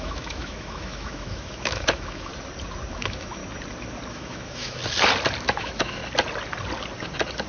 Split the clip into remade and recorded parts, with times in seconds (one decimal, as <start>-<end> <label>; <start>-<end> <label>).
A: 0.0-2.3 remade; 2.3-2.9 recorded; 2.9-3.4 remade; 3.4-4.1 recorded; 4.1-4.8 remade; 4.8-5.4 recorded; 5.4-6.0 remade; 6.0-7.5 recorded